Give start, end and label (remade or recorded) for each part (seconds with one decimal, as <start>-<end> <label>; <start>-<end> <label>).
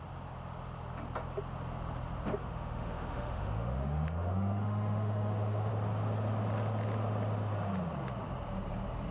0.0-2.4 recorded; 2.4-5.7 remade; 5.7-9.1 recorded